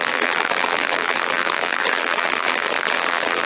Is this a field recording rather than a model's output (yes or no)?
no